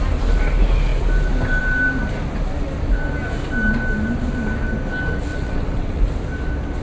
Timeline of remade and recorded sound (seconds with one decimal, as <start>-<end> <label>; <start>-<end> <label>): 0.0-5.3 recorded; 5.3-6.0 remade; 6.0-6.8 recorded

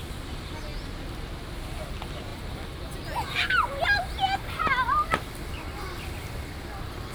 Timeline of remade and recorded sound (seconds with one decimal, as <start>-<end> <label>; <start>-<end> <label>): 0.0-7.1 recorded

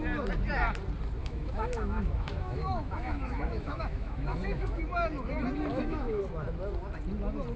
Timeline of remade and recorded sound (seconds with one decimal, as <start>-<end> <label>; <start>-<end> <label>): 0.0-1.2 recorded; 1.2-4.8 remade; 4.8-5.7 recorded; 5.7-6.2 remade; 6.2-7.6 recorded

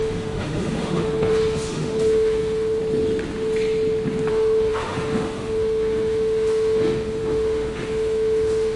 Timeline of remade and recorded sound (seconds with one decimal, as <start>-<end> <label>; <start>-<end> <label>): 0.0-2.8 remade; 2.8-4.3 recorded; 4.3-8.8 remade

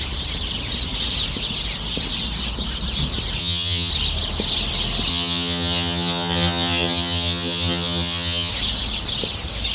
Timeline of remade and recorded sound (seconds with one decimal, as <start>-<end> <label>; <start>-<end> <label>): 0.0-3.4 recorded; 3.4-3.9 remade; 3.9-5.1 recorded; 5.1-8.5 remade; 8.5-9.7 recorded

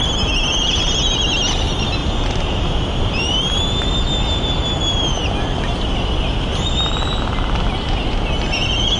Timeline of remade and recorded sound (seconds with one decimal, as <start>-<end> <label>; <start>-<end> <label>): 0.0-2.0 recorded; 2.0-3.6 remade; 3.6-9.0 recorded